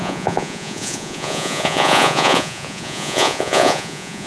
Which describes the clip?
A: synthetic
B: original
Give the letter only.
A